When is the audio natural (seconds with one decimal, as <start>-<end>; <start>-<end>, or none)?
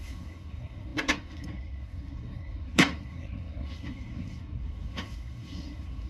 none